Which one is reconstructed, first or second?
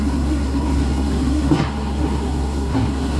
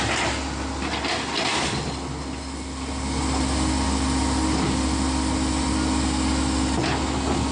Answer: first